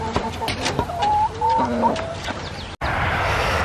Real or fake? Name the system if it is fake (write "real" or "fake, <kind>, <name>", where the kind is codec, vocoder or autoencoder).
real